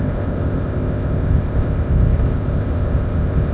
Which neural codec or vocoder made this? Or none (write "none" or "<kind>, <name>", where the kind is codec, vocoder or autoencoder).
codec, ZipCodec